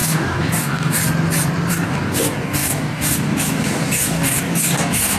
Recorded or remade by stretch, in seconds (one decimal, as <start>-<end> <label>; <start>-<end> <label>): 0.0-1.0 remade; 1.0-1.7 recorded; 1.7-5.2 remade